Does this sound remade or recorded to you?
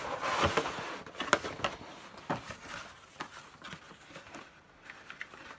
recorded